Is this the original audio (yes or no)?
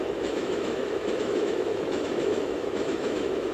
no